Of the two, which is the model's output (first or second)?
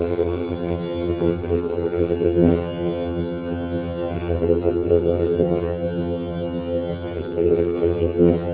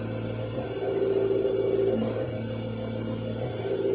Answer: first